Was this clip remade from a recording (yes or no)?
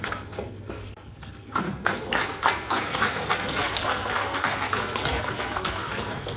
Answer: yes